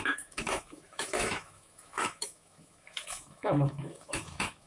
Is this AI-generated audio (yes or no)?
yes